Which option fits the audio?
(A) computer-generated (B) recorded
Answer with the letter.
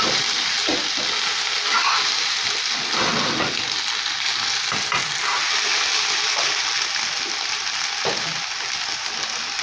B